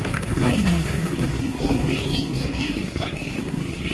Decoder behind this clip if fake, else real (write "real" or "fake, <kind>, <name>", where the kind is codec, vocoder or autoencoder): fake, codec, SNAC